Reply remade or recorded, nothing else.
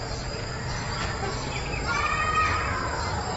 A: remade